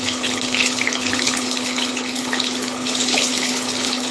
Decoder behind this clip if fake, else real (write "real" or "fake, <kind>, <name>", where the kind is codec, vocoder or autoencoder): fake, codec, HILCodec